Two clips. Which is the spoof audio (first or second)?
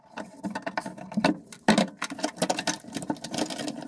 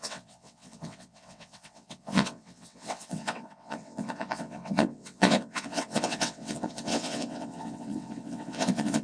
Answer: second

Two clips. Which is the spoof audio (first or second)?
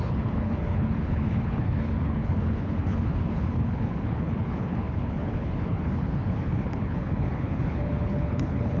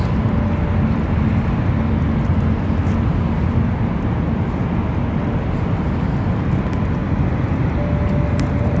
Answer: first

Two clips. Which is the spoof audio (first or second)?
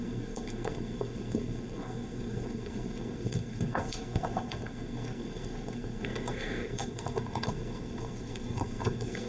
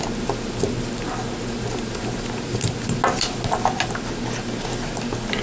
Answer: first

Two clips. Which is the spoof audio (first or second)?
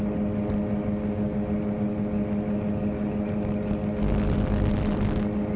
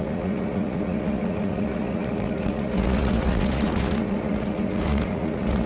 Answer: second